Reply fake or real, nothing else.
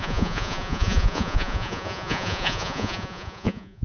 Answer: fake